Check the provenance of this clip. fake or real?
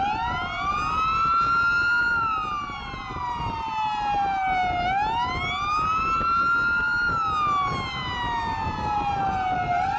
real